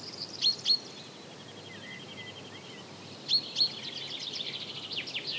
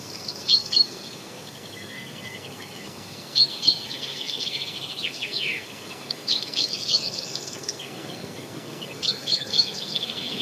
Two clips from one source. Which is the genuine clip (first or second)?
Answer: first